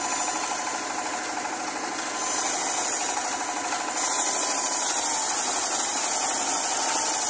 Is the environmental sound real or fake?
real